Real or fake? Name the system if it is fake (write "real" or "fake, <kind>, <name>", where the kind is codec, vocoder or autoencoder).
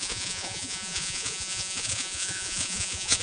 fake, vocoder, Vocos